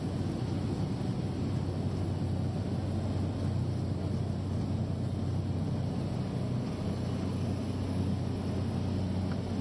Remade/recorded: recorded